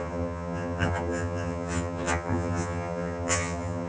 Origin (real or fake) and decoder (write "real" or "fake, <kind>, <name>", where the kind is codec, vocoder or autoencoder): fake, vocoder, HiFi-GAN